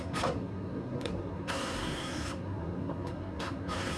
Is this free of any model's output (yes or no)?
no